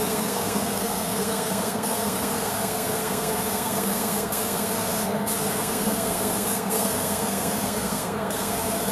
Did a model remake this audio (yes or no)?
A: yes